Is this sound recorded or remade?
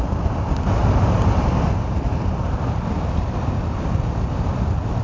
recorded